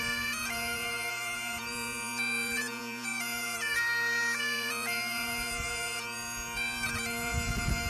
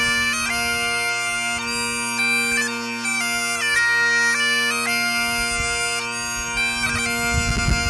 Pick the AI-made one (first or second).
first